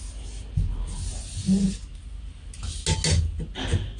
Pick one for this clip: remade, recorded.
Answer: recorded